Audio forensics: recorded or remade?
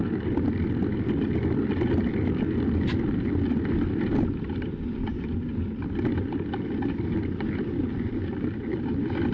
recorded